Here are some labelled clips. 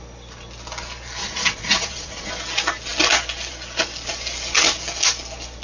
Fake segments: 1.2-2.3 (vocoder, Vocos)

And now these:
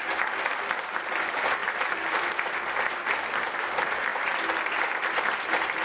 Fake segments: none